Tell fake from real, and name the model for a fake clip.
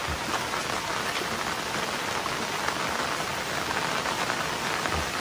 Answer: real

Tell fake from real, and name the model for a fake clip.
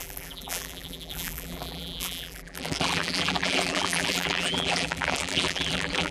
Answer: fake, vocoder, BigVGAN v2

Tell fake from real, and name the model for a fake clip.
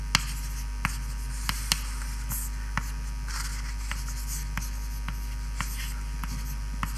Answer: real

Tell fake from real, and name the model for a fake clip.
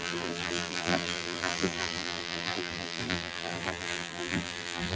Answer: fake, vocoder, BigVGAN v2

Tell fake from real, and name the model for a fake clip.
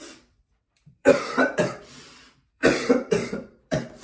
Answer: fake, vocoder, BigVGAN v2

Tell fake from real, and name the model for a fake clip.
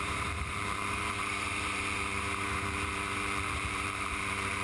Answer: fake, vocoder, BigVGAN v2